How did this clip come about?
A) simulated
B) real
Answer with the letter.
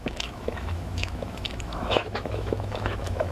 A